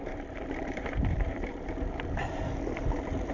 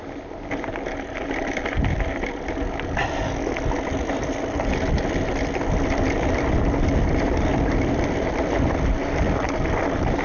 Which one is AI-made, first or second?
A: first